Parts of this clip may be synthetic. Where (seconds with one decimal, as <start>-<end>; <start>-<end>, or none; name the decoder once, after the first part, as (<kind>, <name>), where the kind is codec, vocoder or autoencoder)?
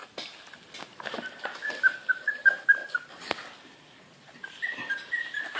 2.1-2.8 (vocoder, BigVGAN v2); 4.0-5.6